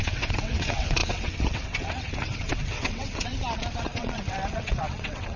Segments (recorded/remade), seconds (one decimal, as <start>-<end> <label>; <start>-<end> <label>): 0.0-3.3 remade; 3.3-3.8 recorded; 3.8-5.4 remade